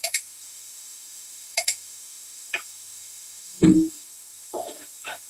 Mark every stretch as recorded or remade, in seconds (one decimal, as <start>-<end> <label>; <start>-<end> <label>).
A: 0.0-5.3 remade